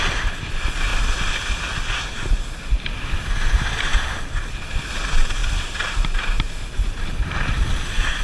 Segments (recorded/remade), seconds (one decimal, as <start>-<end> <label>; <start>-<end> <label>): 0.0-8.2 recorded